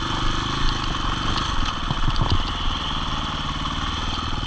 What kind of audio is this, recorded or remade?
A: recorded